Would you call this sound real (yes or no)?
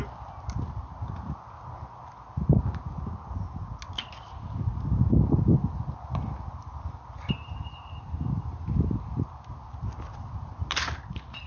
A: yes